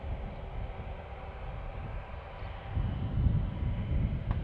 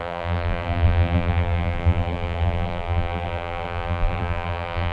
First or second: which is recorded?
first